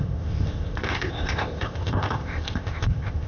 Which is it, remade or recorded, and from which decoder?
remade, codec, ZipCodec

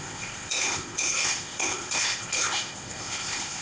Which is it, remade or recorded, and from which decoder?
remade, codec, ZipCodec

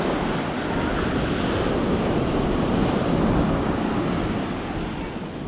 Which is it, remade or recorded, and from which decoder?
recorded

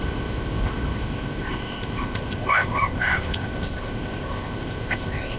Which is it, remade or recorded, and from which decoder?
remade, codec, ZipCodec